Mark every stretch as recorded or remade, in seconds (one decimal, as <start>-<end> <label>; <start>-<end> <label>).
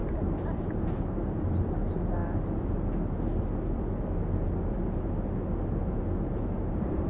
0.0-2.2 remade; 2.2-6.5 recorded; 6.5-7.1 remade